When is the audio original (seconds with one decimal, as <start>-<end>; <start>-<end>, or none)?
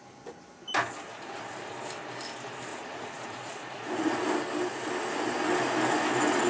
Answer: 0.0-1.1; 1.7-2.7; 4.3-6.5